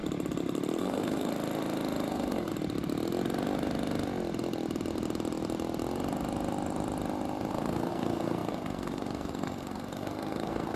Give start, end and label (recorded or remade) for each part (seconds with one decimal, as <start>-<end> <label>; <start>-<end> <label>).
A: 0.0-0.8 recorded; 0.8-1.3 remade; 1.3-2.1 recorded; 2.1-2.5 remade; 2.5-7.5 recorded; 7.5-10.8 remade